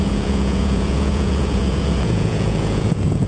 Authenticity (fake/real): fake